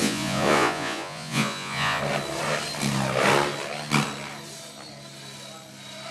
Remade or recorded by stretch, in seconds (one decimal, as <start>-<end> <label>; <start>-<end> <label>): 0.0-2.0 remade; 2.0-6.1 recorded